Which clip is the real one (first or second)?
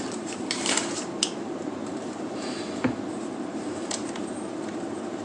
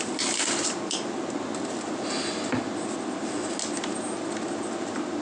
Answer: second